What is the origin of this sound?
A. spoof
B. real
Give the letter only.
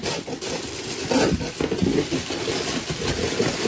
B